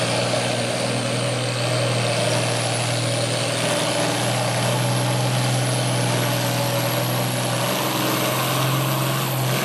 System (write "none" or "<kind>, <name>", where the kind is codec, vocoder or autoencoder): none